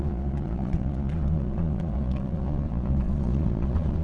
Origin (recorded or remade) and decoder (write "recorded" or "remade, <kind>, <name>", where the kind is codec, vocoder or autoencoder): remade, vocoder, Vocos